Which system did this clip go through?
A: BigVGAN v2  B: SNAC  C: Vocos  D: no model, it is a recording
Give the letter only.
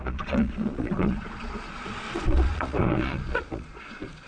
C